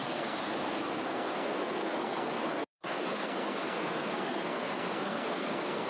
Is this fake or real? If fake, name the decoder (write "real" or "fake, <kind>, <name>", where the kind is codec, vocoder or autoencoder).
fake, codec, SNAC